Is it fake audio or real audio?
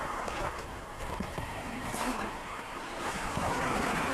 fake